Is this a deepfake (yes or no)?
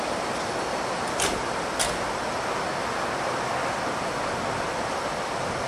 no